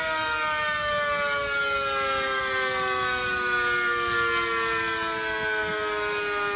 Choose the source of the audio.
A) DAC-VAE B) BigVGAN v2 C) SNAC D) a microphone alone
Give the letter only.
D